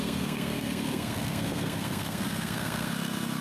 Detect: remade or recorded remade